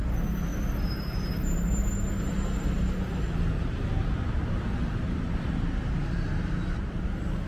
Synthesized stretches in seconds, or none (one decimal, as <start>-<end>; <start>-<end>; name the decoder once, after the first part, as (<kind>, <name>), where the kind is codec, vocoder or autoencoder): none

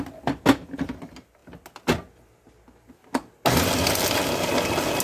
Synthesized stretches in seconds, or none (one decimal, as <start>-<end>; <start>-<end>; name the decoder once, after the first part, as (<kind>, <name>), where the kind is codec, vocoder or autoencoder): none

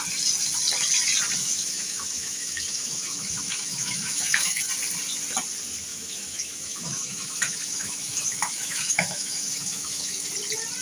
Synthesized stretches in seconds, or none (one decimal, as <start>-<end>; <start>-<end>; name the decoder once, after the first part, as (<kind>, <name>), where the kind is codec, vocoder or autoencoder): 1.4-4.6 (autoencoder, DAC-VAE); 5.9-10.3